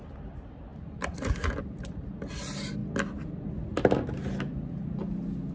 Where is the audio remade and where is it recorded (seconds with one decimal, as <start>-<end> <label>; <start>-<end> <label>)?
0.0-5.5 recorded